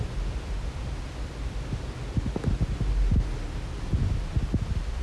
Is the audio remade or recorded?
recorded